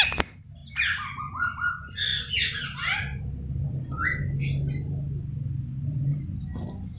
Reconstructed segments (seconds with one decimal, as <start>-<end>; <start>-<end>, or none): none